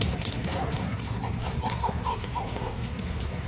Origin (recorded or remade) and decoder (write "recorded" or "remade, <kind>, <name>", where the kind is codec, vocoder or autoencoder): remade, codec, SNAC